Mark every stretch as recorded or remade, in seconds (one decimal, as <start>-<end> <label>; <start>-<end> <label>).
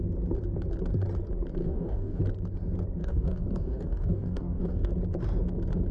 0.0-1.6 recorded; 1.6-2.2 remade; 2.2-3.0 recorded; 3.0-4.9 remade; 4.9-5.9 recorded